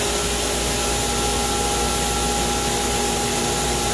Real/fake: real